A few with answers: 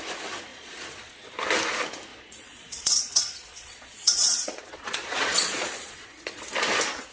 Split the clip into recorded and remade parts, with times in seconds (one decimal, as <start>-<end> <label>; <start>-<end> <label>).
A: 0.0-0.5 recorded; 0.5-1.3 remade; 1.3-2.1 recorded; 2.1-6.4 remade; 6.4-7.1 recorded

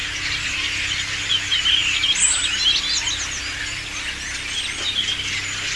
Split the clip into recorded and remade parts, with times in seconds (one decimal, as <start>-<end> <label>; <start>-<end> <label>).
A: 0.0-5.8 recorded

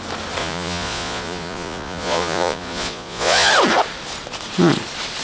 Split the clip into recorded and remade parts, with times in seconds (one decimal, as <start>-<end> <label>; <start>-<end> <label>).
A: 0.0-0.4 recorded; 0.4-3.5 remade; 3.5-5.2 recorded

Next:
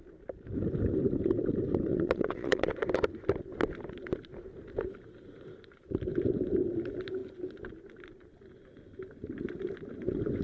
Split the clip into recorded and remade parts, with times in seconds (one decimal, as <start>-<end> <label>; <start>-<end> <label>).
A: 0.0-1.9 recorded; 1.9-2.7 remade; 2.7-10.4 recorded